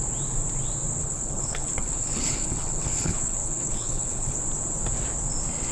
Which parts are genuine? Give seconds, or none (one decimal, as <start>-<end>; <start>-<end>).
0.0-1.0; 4.4-5.7